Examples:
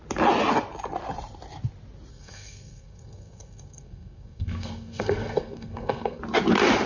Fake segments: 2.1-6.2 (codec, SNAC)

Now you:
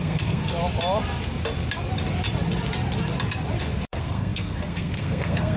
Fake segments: 0.0-0.5 (codec, SNAC); 3.9-5.6

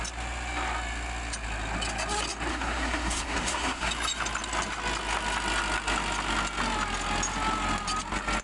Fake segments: 2.5-3.9 (codec, SNAC)

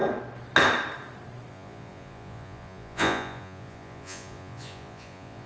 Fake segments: 1.5-5.5 (vocoder, Vocos)

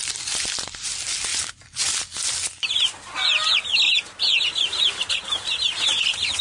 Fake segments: none